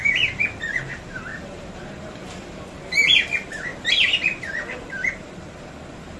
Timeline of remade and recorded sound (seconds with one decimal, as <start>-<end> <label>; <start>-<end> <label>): 0.0-1.3 recorded; 1.3-2.8 remade; 2.8-6.2 recorded